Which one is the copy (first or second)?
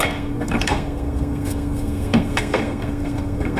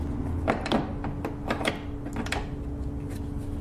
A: first